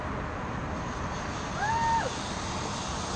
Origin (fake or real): real